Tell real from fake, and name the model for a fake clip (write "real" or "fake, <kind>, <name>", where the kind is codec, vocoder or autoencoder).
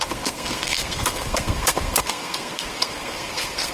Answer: fake, codec, SNAC